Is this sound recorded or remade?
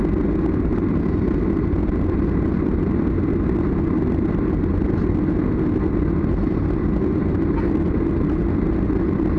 recorded